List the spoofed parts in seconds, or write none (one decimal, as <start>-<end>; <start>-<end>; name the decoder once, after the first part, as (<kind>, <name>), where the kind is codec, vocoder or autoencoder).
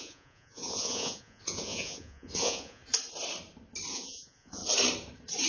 0.0-2.8 (vocoder, Vocos); 3.9-4.6